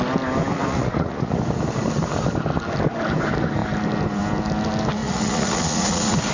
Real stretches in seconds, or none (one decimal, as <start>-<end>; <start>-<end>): 0.0-0.5; 1.4-5.0